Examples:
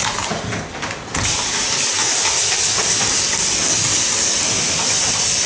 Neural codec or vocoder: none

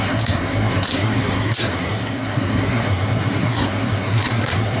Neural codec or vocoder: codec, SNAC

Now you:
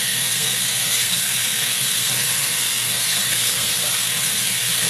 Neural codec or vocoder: codec, SNAC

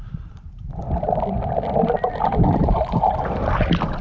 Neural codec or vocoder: vocoder, BigVGAN v2